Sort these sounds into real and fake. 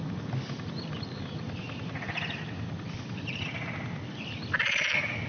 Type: real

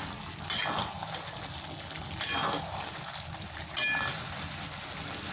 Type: real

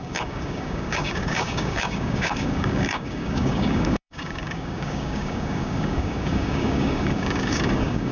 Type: fake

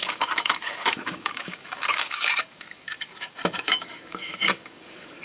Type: fake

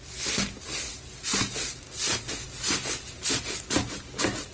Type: real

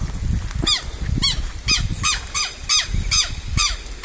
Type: real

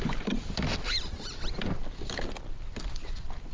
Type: real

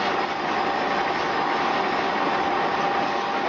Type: real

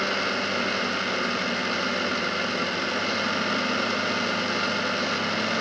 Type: real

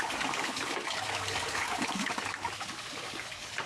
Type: fake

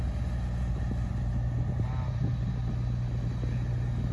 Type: real